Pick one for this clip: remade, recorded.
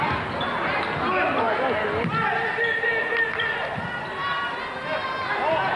recorded